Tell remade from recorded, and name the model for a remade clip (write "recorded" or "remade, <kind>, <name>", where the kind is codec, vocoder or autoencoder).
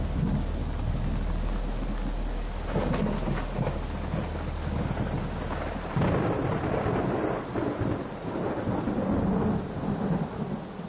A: recorded